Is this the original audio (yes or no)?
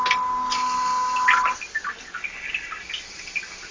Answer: yes